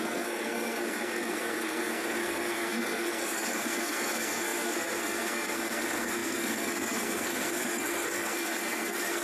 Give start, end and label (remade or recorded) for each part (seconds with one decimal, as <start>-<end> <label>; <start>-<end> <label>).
0.0-9.2 remade